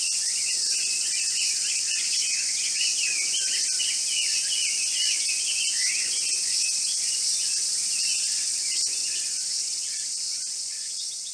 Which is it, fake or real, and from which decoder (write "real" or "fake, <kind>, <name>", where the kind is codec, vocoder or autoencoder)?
fake, vocoder, Vocos